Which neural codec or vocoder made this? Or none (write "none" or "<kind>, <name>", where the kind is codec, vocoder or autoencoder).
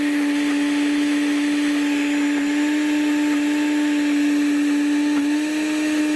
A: none